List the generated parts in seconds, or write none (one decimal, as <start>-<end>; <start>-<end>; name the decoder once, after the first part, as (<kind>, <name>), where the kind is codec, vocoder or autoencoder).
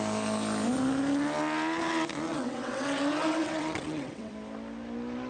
2.3-4.3 (vocoder, WaveNeXt)